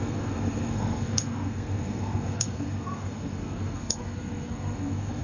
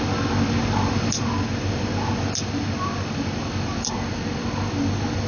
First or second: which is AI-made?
first